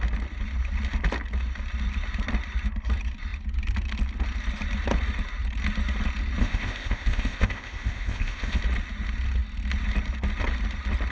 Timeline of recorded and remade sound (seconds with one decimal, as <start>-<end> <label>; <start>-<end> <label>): 0.0-6.4 recorded; 6.4-8.6 remade; 8.6-11.1 recorded